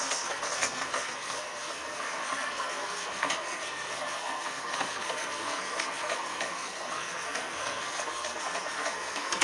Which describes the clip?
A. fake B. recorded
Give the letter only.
A